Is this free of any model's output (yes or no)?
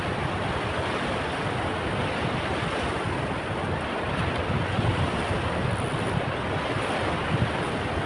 yes